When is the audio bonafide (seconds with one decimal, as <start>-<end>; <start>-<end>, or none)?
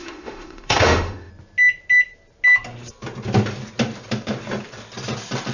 1.3-5.5